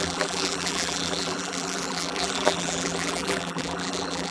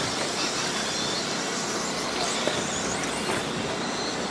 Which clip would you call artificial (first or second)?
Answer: first